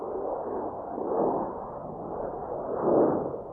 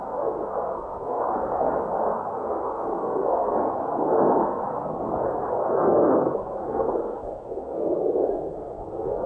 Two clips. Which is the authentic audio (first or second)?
first